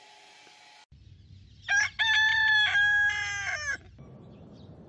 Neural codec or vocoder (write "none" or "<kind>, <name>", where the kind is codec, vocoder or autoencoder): none